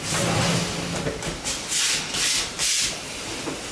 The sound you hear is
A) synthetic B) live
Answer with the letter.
B